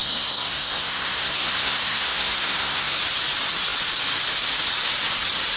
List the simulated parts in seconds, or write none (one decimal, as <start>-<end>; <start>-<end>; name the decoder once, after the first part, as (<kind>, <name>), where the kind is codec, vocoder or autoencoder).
0.0-3.0 (codec, SNAC)